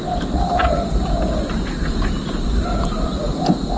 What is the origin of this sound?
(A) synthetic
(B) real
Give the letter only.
B